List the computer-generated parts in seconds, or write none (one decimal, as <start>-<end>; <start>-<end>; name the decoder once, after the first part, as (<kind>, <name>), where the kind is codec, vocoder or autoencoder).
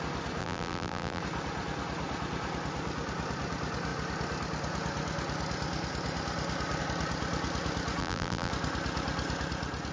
0.4-1.2 (vocoder, BigVGAN v2); 8.0-8.5